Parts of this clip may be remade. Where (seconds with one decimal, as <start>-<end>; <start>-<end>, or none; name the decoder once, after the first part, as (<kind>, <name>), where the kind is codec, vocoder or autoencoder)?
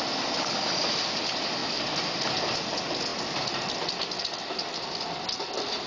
none